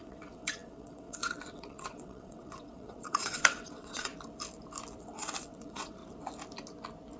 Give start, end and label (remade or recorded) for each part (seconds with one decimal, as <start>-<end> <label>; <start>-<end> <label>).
0.0-4.1 remade; 4.1-5.0 recorded; 5.0-6.0 remade; 6.0-7.2 recorded